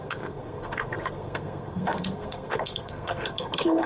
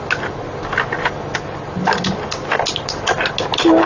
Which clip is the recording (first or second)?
second